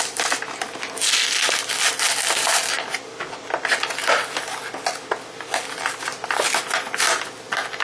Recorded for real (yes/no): yes